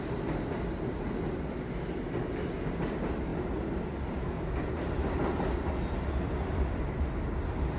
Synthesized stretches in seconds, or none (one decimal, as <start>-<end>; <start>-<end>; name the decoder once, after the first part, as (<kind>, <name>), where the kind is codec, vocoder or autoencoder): none